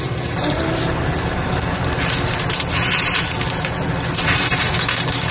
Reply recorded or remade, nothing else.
remade